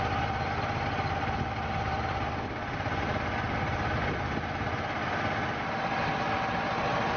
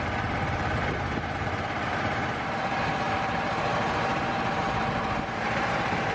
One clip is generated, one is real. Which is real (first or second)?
first